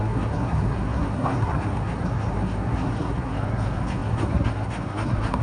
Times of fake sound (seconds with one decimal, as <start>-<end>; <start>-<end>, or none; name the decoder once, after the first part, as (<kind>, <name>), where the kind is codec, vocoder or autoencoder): 0.0-5.4 (codec, SNAC)